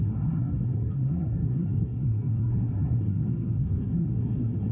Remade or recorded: remade